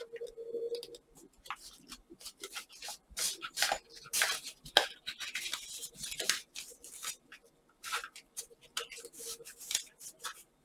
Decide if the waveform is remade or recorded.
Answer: remade